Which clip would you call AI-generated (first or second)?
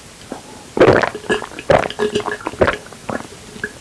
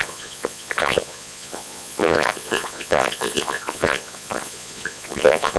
second